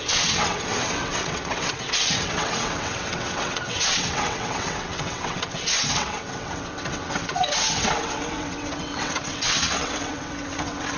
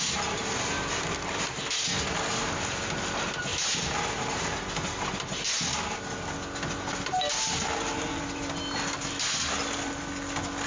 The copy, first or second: first